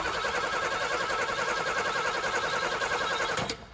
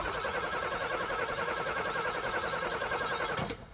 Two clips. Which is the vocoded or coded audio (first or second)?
second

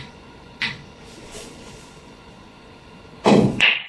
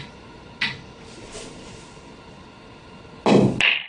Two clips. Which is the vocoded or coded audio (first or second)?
first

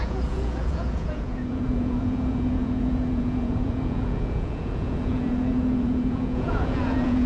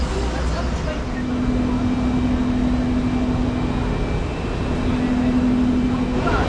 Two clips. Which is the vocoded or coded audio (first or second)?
first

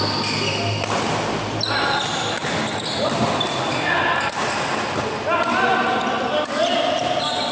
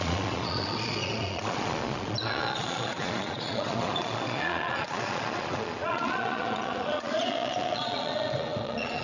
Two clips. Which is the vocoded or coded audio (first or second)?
second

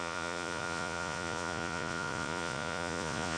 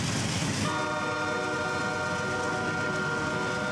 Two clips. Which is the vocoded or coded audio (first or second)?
first